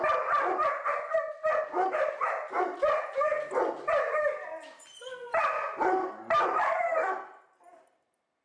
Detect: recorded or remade recorded